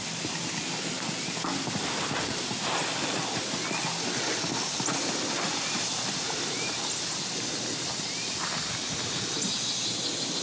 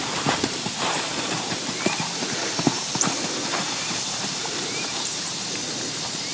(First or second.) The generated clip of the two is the second